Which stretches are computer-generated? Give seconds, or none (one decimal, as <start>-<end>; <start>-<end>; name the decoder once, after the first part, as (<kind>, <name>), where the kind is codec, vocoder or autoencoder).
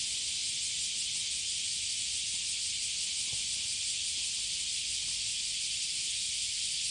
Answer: none